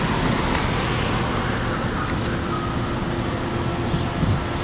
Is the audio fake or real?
real